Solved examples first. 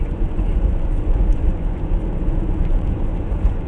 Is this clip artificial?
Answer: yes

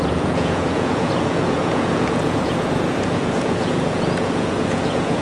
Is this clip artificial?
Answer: yes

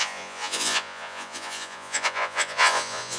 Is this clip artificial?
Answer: yes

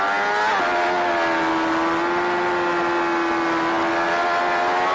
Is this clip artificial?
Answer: no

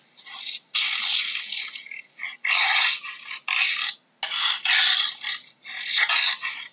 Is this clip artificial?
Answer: no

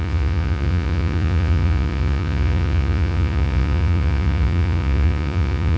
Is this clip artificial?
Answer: yes